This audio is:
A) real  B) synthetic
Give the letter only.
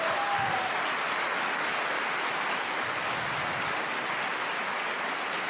A